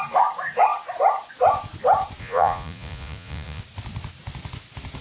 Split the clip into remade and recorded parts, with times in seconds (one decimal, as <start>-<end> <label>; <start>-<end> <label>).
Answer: 0.0-2.2 recorded; 2.2-3.6 remade; 3.6-5.0 recorded